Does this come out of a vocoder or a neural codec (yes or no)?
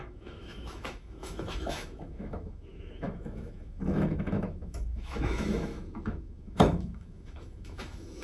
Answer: yes